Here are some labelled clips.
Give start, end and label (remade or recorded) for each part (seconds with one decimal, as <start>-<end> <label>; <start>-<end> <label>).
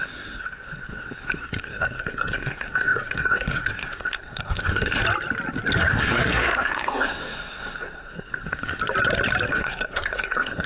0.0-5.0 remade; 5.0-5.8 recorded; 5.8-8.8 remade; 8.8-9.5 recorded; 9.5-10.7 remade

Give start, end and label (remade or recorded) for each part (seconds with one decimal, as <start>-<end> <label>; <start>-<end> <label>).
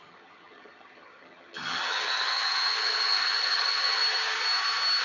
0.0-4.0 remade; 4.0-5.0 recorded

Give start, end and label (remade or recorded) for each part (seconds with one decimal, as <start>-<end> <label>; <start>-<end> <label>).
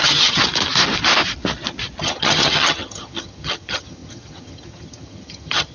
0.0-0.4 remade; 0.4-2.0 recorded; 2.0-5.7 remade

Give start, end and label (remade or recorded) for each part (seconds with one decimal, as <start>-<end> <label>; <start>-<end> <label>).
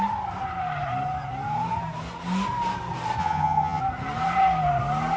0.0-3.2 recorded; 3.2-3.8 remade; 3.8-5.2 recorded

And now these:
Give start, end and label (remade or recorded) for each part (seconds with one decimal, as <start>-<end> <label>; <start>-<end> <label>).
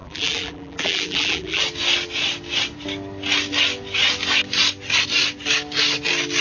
0.0-1.6 remade; 1.6-6.4 recorded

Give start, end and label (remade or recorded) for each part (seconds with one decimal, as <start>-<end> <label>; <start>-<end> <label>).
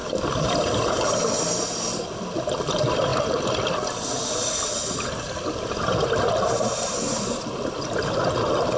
0.0-8.8 recorded